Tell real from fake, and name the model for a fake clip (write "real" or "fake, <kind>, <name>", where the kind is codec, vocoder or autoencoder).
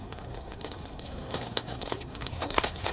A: fake, codec, SNAC